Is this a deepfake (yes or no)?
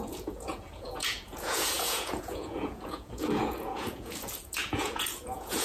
yes